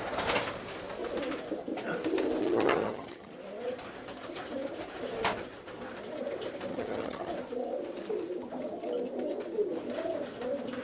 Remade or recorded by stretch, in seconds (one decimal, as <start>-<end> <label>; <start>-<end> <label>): 0.0-2.4 recorded; 2.4-3.3 remade; 3.3-6.7 recorded; 6.7-7.3 remade; 7.3-10.8 recorded